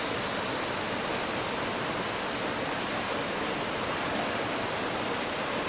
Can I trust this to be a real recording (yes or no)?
yes